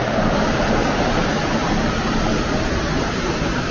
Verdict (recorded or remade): remade